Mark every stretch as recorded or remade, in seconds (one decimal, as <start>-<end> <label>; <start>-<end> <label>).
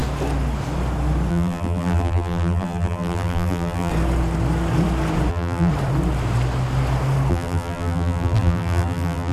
0.0-1.3 recorded; 1.3-3.9 remade; 3.9-5.3 recorded; 5.3-5.7 remade; 5.7-7.3 recorded; 7.3-9.3 remade